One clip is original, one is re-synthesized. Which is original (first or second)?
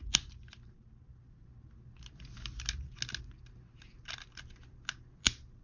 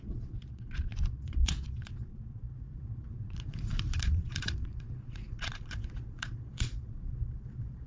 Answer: first